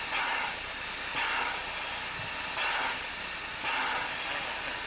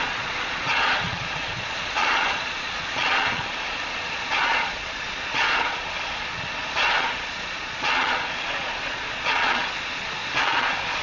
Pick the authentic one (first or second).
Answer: first